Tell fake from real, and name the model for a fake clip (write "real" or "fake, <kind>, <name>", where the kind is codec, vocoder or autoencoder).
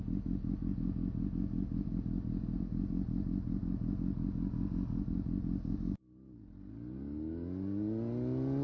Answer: real